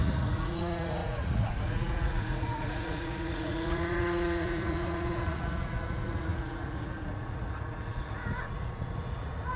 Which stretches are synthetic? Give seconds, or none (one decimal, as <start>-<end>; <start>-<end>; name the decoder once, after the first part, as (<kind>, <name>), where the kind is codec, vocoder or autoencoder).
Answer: 0.0-9.6 (vocoder, Vocos)